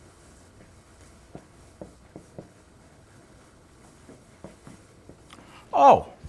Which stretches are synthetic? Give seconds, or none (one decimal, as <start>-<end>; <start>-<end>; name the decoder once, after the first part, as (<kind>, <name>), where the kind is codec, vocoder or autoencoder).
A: 0.0-5.3 (codec, HILCodec)